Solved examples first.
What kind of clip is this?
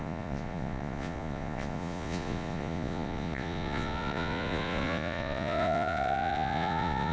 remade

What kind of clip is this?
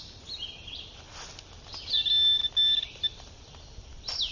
recorded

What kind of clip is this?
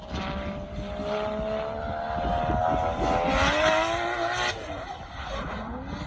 recorded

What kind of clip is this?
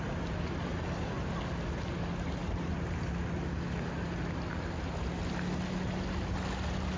recorded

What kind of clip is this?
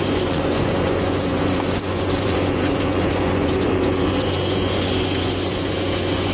remade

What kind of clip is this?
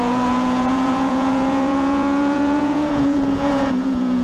remade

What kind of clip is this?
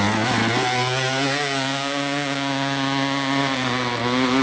recorded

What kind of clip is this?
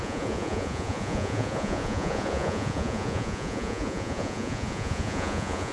remade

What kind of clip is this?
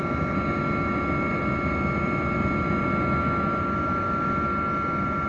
recorded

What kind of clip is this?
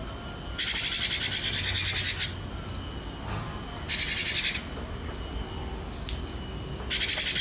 recorded